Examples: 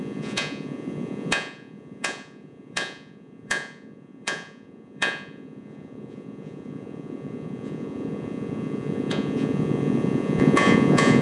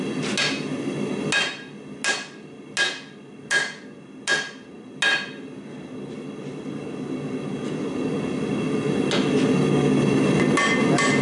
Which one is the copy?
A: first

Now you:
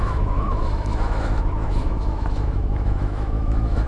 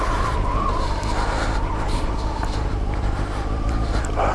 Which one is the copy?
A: first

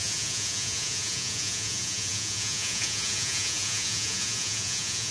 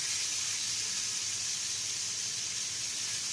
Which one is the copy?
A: first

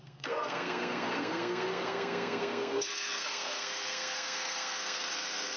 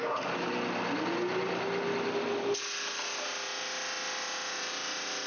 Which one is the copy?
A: first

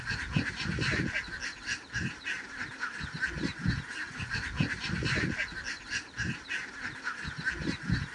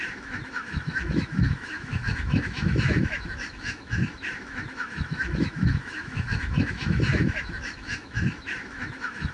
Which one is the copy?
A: second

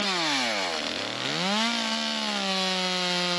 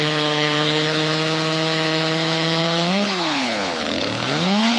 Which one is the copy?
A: second